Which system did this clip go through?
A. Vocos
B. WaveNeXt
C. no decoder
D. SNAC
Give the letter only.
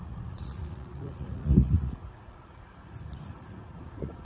A